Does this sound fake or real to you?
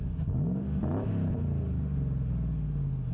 real